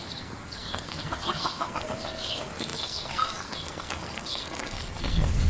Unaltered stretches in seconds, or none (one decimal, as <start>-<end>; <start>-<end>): none